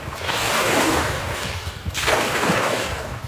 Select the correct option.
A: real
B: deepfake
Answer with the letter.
B